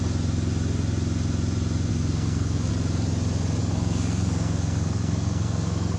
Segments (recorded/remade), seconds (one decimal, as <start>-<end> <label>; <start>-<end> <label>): 0.0-1.9 recorded; 1.9-2.7 remade; 2.7-3.6 recorded; 3.6-6.0 remade